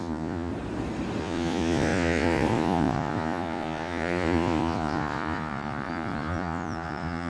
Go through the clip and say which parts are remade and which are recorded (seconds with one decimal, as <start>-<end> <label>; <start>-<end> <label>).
0.0-0.5 remade; 0.5-1.2 recorded; 1.2-7.3 remade

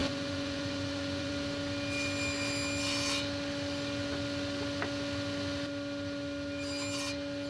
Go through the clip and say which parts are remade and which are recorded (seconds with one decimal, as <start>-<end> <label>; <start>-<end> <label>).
0.0-1.3 remade; 1.3-7.5 recorded

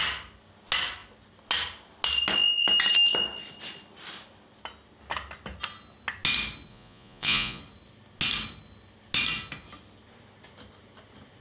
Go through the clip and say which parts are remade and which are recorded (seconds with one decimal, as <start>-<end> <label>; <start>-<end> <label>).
0.0-6.7 recorded; 6.7-7.6 remade; 7.6-11.4 recorded

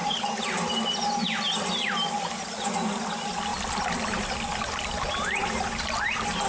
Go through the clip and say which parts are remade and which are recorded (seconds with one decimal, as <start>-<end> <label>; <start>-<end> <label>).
0.0-6.5 recorded

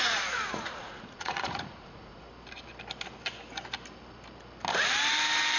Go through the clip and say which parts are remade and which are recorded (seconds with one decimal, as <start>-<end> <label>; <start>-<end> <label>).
0.0-2.3 remade; 2.3-5.6 recorded